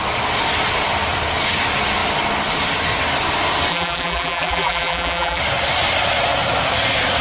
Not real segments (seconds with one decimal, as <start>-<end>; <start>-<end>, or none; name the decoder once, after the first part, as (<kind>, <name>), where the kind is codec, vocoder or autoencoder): 3.7-5.4 (vocoder, BigVGAN v2)